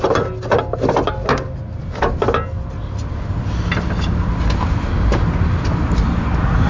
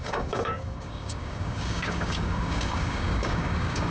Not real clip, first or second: second